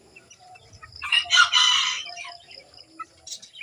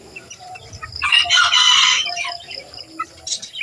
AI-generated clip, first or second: second